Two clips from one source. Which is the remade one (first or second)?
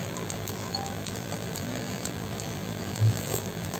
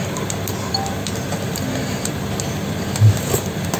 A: first